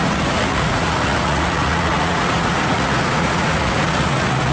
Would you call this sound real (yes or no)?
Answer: no